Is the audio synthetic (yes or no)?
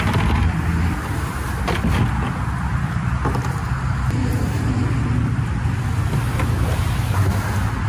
no